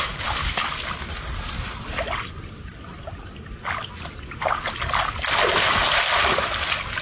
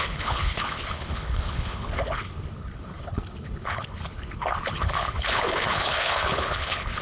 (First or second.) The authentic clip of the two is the first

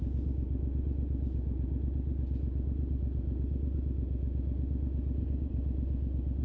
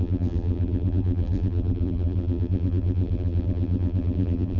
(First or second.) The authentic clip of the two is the first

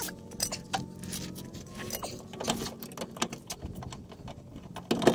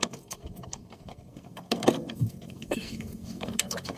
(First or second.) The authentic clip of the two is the first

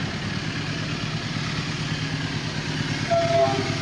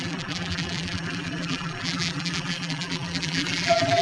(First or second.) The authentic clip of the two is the first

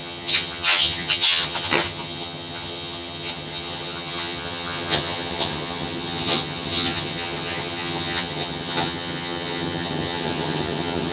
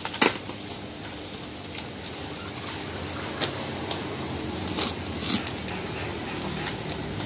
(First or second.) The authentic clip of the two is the second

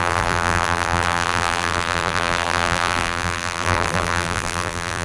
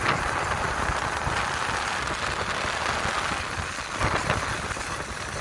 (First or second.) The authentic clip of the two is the second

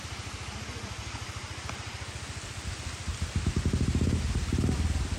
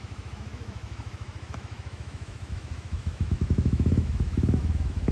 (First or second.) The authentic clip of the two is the first